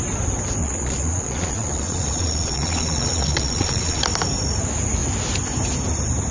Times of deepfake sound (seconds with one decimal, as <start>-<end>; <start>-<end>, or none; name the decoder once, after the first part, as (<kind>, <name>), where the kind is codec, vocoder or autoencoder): 0.6-4.0 (vocoder, Vocos)